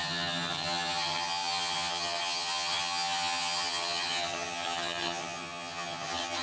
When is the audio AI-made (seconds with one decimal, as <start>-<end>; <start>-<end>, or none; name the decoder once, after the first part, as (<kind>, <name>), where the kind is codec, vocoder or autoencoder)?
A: 0.0-6.4 (vocoder, HiFi-GAN)